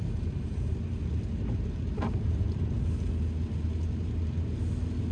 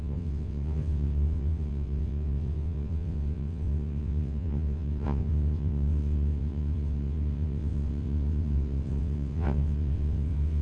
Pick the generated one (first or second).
second